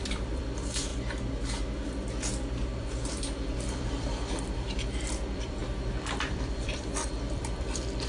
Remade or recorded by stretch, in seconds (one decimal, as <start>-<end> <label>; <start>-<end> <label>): 0.0-0.9 remade; 0.9-2.8 recorded; 2.8-5.6 remade; 5.6-6.3 recorded; 6.3-8.1 remade